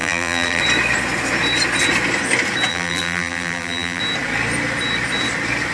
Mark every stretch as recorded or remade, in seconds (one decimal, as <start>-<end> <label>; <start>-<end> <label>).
0.0-0.6 remade; 0.6-2.7 recorded; 2.7-4.0 remade; 4.0-5.7 recorded